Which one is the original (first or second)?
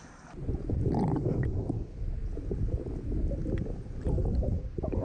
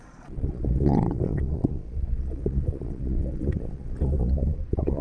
first